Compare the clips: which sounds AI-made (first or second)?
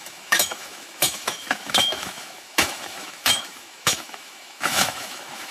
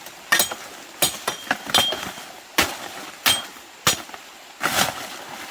first